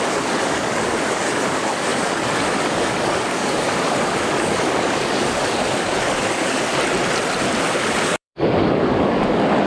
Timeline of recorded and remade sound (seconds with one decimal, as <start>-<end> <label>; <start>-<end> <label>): 0.0-6.7 remade; 6.7-7.6 recorded; 7.6-9.7 remade

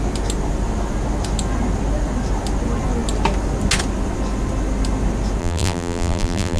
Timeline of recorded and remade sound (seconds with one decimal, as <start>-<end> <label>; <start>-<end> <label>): 0.0-5.4 recorded; 5.4-6.6 remade

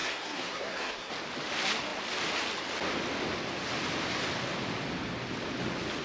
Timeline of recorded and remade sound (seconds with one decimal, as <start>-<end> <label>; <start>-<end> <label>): 0.0-1.1 remade; 1.1-6.0 recorded

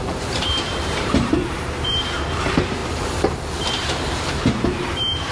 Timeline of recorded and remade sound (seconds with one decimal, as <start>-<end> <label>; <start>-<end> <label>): 0.0-5.3 remade

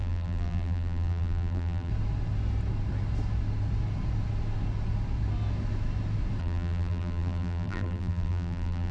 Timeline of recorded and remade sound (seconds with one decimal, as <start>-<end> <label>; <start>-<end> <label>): 0.0-1.9 remade; 1.9-6.4 recorded; 6.4-8.9 remade

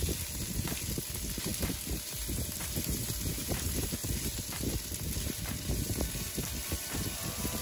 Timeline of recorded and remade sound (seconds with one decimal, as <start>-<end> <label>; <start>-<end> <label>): 0.0-7.6 remade